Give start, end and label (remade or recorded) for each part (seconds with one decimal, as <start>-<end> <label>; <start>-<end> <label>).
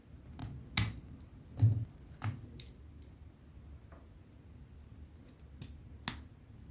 0.0-6.7 recorded